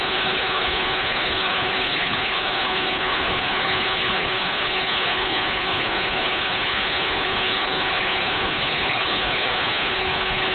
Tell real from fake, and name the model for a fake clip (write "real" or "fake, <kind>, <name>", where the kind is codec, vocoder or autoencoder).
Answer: fake, codec, HILCodec